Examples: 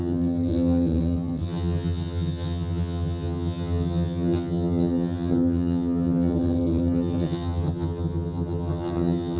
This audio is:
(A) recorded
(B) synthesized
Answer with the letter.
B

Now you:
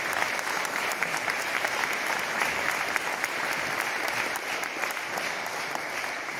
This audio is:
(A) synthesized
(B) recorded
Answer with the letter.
A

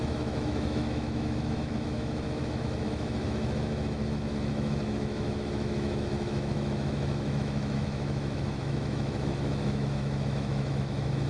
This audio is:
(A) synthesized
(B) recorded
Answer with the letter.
A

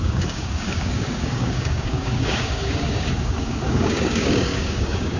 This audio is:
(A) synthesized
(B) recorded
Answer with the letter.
A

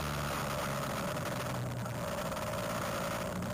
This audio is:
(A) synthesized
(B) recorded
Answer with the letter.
B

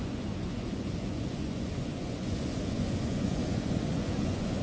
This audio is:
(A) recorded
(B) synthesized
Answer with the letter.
B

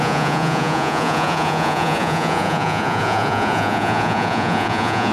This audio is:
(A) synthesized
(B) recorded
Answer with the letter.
A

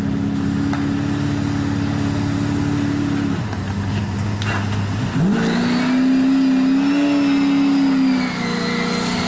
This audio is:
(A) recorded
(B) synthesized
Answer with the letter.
A